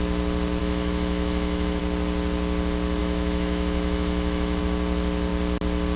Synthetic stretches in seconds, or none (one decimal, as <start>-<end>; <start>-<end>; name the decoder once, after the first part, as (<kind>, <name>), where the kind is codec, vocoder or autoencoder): 0.6-1.8 (autoencoder, DAC-VAE); 3.0-4.6